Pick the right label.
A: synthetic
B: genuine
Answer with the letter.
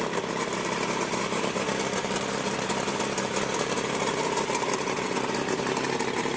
A